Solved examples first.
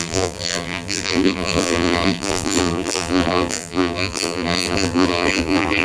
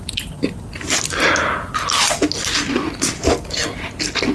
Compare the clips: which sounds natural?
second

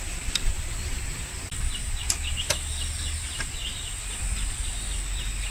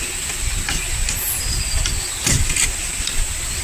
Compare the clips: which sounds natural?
first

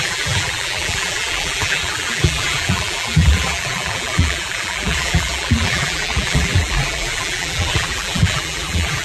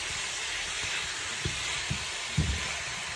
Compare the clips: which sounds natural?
second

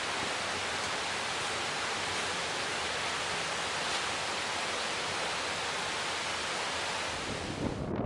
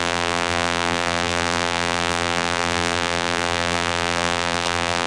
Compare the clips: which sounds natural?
first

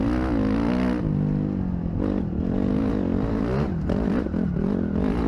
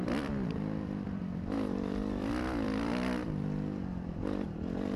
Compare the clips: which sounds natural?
first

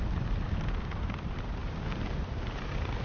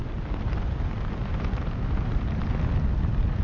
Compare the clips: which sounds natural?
second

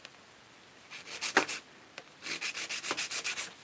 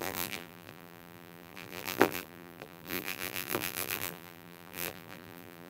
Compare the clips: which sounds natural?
first